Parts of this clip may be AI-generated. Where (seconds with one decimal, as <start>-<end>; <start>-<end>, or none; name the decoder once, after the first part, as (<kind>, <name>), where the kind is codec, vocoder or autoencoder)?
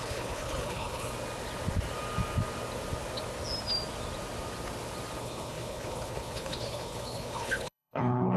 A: 0.0-1.1 (codec, HILCodec); 5.2-8.4